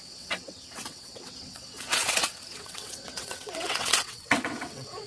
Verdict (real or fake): fake